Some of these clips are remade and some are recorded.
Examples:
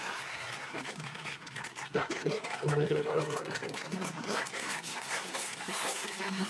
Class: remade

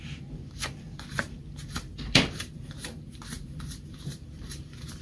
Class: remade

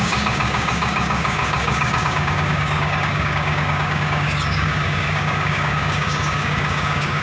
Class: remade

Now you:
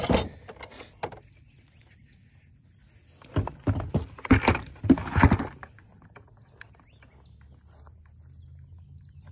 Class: recorded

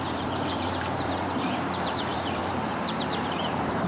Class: remade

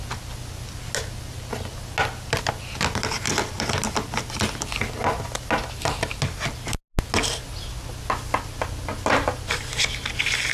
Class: recorded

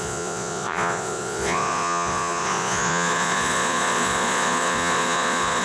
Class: remade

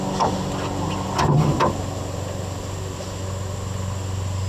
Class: recorded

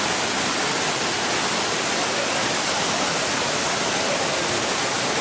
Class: recorded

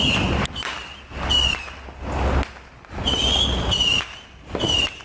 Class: recorded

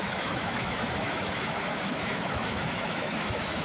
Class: remade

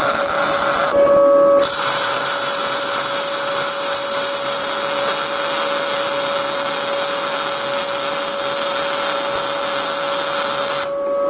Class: recorded